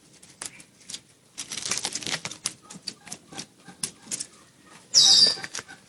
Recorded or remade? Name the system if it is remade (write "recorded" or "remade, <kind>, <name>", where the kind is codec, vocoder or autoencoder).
recorded